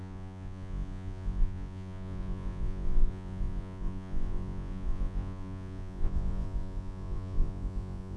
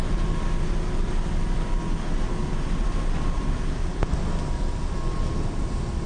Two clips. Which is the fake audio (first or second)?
first